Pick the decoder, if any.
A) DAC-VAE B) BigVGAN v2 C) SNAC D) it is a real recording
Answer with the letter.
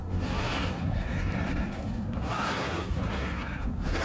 C